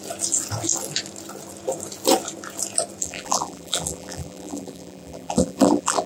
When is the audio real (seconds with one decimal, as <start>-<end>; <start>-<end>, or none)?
0.0-3.0